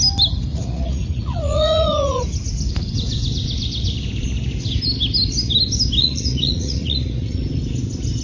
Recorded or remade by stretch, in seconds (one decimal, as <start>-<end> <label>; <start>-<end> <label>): 0.0-0.5 recorded; 0.5-2.2 remade; 2.2-6.0 recorded; 6.0-7.4 remade; 7.4-8.2 recorded